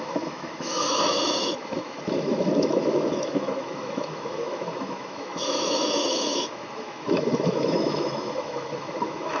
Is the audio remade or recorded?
remade